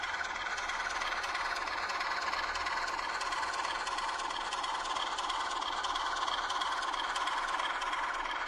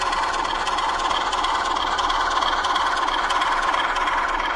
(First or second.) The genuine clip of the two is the second